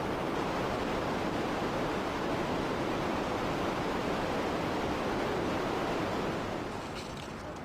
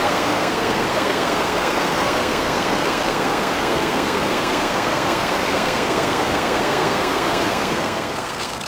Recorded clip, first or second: first